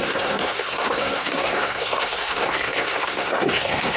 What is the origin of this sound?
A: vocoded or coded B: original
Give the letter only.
A